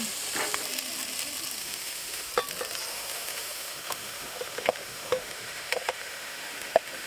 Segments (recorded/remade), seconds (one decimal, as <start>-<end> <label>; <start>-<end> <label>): 0.0-1.6 recorded; 1.6-2.3 remade; 2.3-2.9 recorded; 2.9-7.1 remade